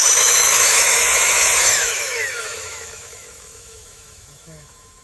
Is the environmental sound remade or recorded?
remade